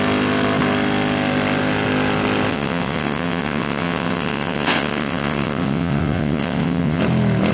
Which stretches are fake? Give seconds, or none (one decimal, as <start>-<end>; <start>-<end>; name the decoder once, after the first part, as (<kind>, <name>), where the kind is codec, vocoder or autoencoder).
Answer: 2.5-7.0 (vocoder, WaveNeXt)